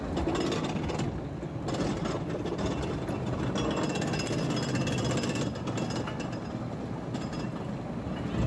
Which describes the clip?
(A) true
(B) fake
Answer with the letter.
A